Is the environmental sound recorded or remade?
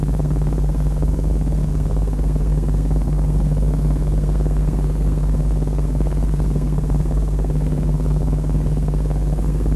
remade